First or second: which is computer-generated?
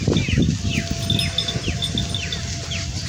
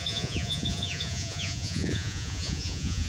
second